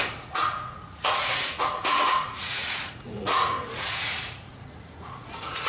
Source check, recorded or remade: remade